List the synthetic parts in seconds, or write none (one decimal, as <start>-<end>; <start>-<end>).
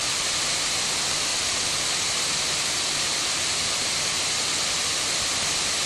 none